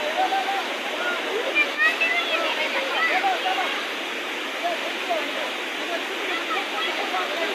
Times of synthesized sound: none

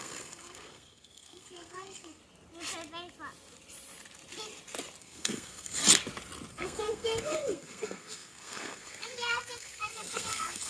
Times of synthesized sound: 0.0-2.2 (codec, SNAC); 5.0-5.8; 6.5-10.7

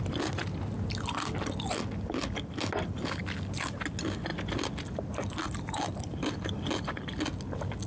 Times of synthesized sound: none

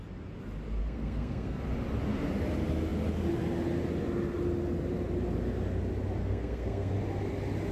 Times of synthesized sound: 0.8-1.6 (codec, SNAC); 6.2-6.9

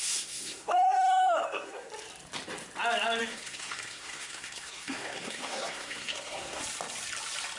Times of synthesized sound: 0.0-1.9 (codec, SNAC); 3.2-6.6

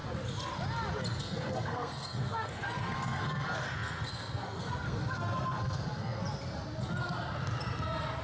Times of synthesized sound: 1.2-6.2 (codec, SNAC)

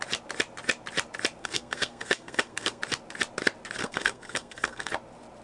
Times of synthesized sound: 1.4-2.8 (codec, SNAC); 3.8-4.9

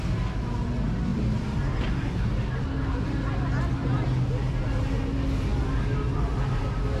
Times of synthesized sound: none